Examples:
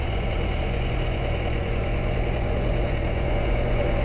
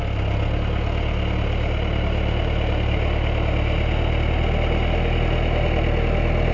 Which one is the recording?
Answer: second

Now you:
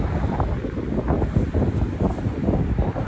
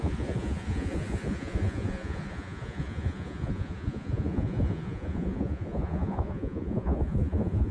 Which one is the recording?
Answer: first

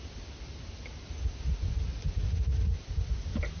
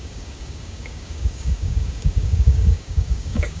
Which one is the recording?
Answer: first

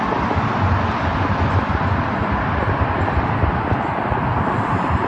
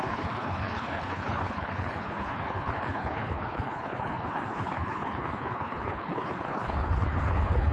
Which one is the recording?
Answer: first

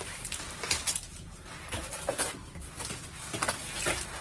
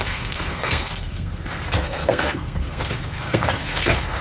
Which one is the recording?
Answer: first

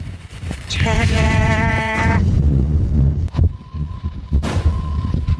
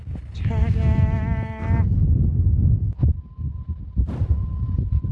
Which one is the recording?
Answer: second